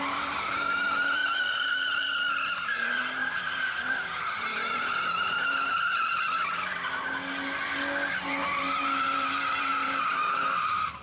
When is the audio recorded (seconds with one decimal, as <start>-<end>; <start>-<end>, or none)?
6.7-8.1